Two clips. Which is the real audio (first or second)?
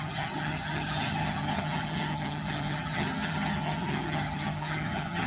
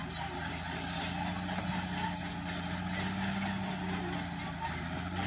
second